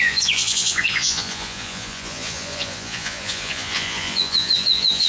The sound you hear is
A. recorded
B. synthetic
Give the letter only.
B